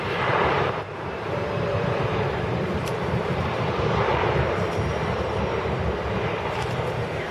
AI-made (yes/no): yes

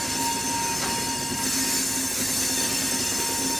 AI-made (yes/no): no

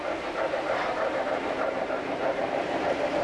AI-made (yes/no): yes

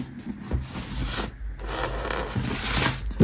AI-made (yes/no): no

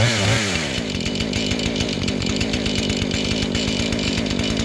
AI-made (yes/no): yes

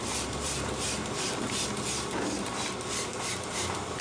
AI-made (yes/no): yes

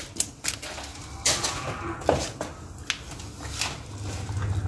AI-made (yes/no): no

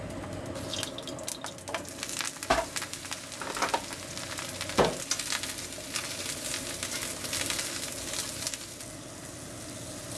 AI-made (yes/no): no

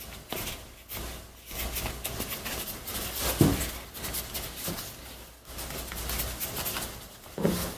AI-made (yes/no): no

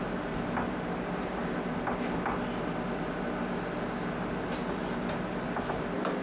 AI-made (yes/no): no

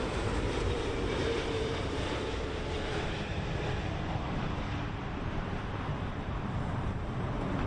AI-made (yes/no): yes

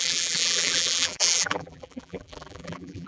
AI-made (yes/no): yes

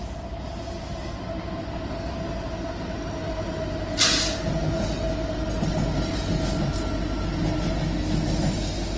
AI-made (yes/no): no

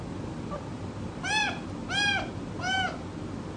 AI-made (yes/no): yes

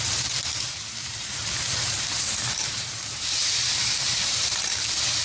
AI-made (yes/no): yes